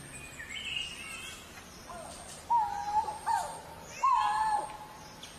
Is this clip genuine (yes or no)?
yes